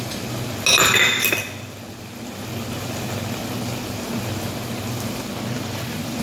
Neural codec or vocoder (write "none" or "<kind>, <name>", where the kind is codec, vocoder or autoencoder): none